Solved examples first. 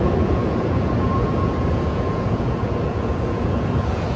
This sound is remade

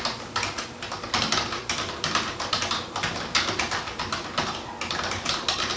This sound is recorded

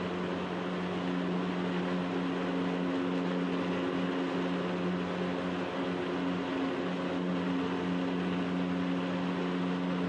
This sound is recorded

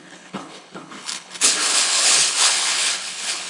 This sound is remade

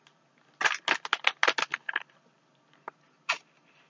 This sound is recorded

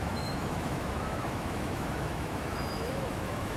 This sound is remade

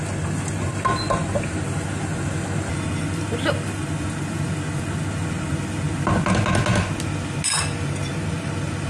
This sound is recorded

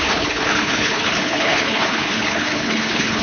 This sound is remade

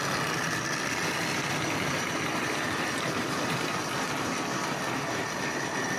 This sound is recorded